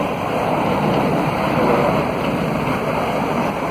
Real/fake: fake